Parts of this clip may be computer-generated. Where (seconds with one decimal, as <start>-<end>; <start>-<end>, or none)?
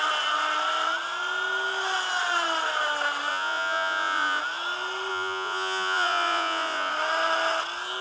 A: 3.3-4.4; 5.1-6.9